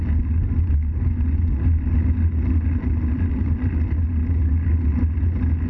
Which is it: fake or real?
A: real